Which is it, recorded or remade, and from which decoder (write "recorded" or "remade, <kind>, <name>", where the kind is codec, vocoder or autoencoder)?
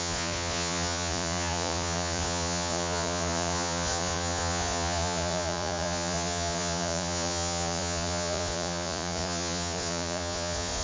remade, vocoder, Vocos